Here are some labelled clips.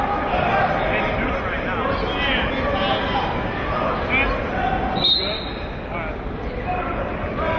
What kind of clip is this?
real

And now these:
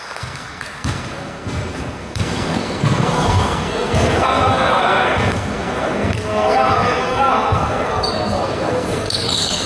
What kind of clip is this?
fake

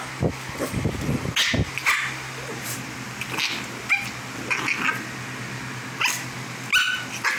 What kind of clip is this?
real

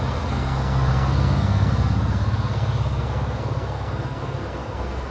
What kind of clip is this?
fake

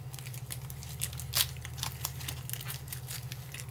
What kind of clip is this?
real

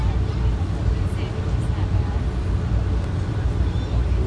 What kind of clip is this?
real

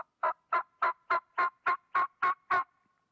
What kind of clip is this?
real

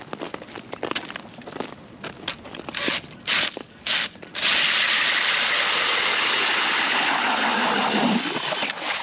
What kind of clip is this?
real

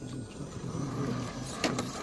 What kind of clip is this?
real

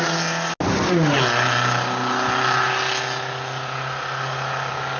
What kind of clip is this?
real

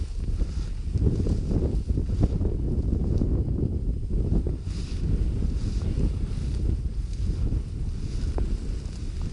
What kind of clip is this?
real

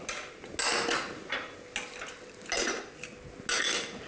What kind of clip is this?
real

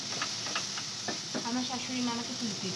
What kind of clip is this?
real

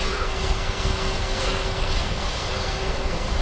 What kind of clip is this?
fake